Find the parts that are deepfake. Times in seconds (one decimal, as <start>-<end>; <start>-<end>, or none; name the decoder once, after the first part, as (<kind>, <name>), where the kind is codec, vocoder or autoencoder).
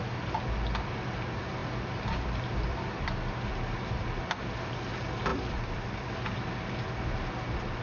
1.6-3.1 (vocoder, BigVGAN v2); 5.3-6.1